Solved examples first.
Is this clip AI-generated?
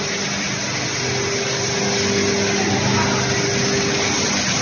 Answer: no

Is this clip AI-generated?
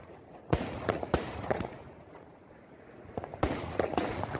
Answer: yes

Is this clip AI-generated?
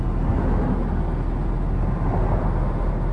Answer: no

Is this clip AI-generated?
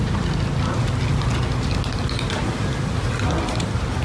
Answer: no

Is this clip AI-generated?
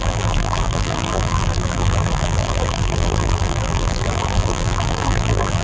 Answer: yes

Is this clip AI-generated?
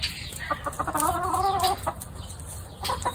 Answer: no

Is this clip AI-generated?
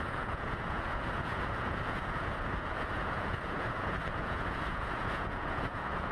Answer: yes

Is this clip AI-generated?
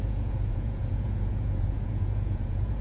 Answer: yes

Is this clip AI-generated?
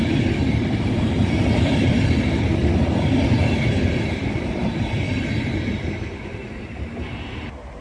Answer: yes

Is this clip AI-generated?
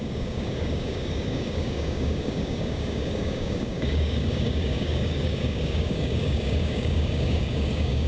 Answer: yes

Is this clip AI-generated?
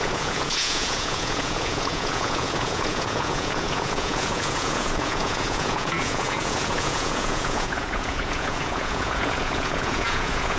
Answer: yes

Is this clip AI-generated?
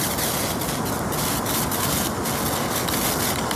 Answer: no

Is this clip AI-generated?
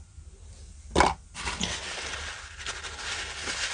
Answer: no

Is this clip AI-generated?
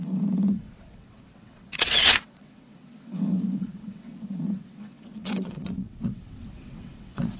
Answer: yes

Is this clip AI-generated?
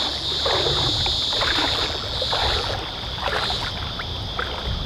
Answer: no